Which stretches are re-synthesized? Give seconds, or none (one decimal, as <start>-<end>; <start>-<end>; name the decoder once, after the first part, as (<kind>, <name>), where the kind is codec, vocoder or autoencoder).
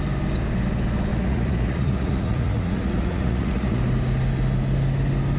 1.1-3.8 (vocoder, Vocos)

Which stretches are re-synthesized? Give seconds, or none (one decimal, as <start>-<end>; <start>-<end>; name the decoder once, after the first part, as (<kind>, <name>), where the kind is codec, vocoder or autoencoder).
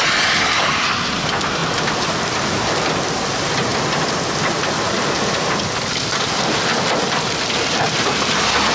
0.0-1.6 (vocoder, BigVGAN v2); 3.3-8.7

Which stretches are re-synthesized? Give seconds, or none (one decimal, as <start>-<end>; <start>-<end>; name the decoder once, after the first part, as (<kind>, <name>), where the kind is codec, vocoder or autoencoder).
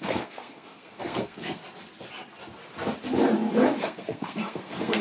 0.0-1.6 (codec, SNAC); 3.8-5.0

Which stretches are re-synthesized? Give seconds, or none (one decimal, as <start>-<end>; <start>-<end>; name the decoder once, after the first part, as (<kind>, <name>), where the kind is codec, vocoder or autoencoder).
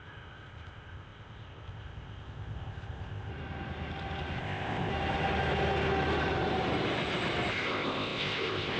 0.0-3.3 (codec, ZipCodec); 4.4-4.9; 7.5-8.8